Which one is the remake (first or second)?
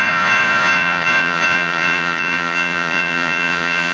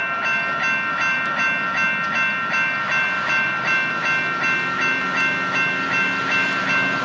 first